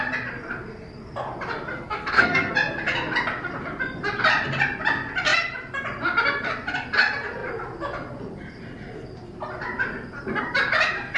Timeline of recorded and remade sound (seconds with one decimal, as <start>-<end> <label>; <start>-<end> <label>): 0.0-1.7 recorded; 1.7-2.5 remade; 2.5-11.2 recorded